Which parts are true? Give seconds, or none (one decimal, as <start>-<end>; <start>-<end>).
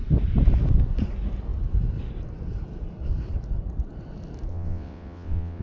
0.0-4.5